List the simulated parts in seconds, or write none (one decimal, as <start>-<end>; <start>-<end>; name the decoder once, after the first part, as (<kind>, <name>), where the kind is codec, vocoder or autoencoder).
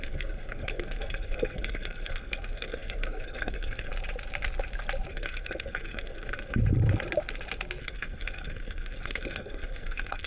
0.0-3.9 (codec, SNAC); 5.1-6.6; 7.8-10.3